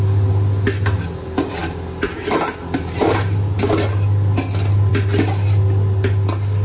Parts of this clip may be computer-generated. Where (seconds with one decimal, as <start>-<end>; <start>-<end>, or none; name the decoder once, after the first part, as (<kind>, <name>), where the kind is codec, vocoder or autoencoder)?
none